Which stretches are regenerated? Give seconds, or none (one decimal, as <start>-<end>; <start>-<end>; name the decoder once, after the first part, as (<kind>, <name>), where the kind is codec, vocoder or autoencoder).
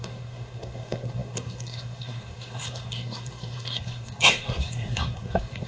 0.0-5.7 (codec, SNAC)